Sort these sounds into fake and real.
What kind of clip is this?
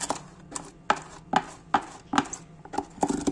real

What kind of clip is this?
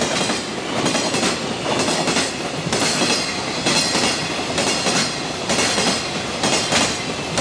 real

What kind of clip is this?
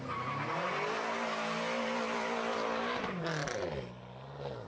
real